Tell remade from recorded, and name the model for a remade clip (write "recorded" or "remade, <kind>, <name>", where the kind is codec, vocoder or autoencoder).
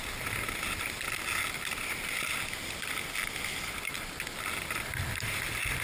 recorded